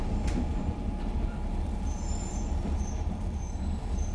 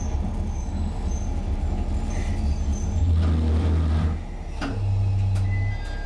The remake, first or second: first